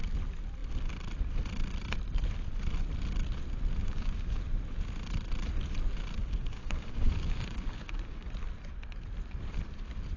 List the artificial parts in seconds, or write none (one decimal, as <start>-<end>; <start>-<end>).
3.8-4.4; 6.2-8.3